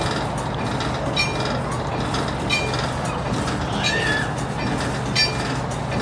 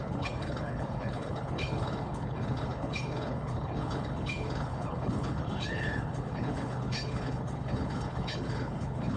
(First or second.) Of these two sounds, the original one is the first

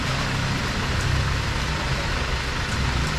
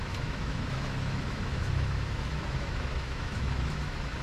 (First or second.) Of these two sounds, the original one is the first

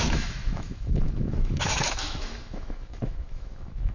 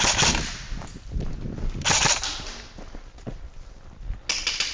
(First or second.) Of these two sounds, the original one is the second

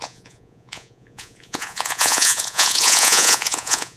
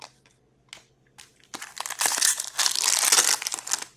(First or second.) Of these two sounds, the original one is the second